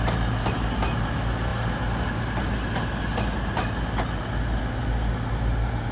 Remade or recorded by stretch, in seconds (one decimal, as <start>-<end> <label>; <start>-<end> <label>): 0.0-5.9 recorded